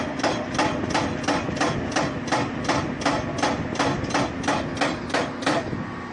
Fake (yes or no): no